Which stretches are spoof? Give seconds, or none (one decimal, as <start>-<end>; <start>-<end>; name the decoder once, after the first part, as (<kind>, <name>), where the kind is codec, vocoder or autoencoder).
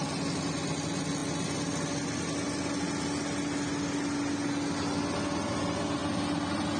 none